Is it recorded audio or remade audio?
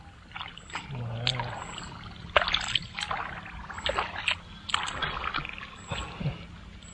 recorded